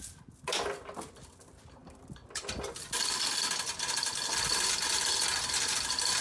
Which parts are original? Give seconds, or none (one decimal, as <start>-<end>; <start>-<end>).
0.0-6.2